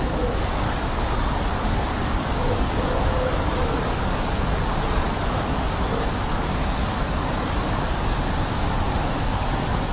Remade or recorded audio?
remade